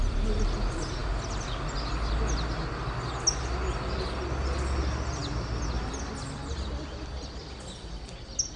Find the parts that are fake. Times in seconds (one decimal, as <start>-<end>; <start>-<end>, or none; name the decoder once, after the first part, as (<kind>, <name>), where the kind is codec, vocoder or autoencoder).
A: none